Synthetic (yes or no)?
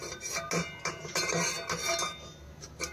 no